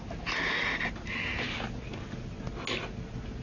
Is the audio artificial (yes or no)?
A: no